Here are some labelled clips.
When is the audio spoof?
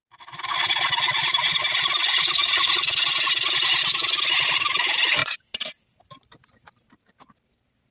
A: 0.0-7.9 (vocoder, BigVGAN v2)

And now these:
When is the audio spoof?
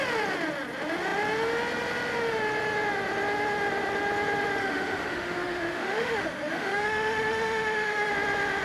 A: 4.6-8.1 (autoencoder, DAC-VAE)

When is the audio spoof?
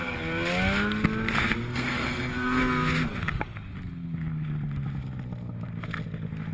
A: 1.7-2.6 (codec, SNAC)